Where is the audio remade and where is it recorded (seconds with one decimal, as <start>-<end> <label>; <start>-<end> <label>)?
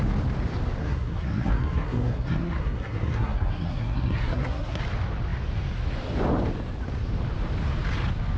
0.0-0.8 recorded; 0.8-4.8 remade; 4.8-8.4 recorded